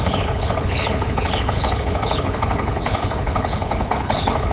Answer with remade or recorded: remade